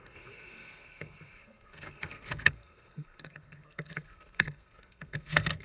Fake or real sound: fake